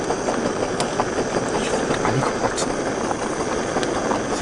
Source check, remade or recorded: recorded